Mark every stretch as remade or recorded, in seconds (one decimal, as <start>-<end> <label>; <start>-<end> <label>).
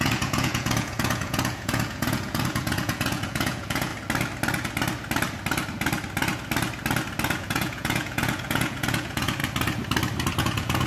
0.0-3.9 remade; 3.9-7.4 recorded; 7.4-9.4 remade; 9.4-10.4 recorded; 10.4-10.9 remade